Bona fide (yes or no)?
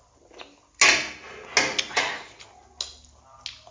yes